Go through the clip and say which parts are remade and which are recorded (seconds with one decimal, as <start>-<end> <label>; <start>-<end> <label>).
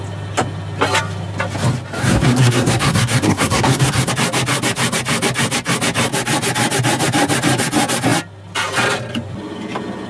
0.0-2.0 recorded; 2.0-4.1 remade; 4.1-10.1 recorded